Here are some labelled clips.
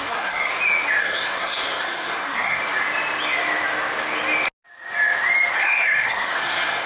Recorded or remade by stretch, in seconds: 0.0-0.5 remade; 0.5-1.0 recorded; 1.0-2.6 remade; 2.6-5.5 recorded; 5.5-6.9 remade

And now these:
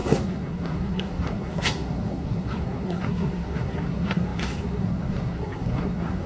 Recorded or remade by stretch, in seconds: 0.0-6.3 remade

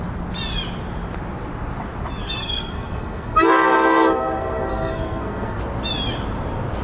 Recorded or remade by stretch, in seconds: 0.0-2.4 recorded; 2.4-5.6 remade; 5.6-6.8 recorded

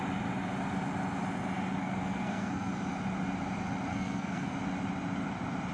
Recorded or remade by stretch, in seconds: 0.0-1.8 recorded; 1.8-2.7 remade; 2.7-3.9 recorded; 3.9-4.5 remade; 4.5-5.7 recorded